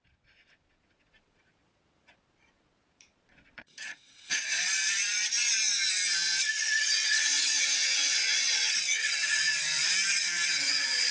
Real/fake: fake